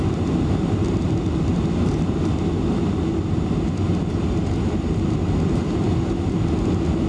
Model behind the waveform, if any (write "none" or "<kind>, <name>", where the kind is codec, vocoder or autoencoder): none